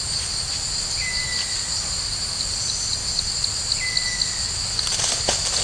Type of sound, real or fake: real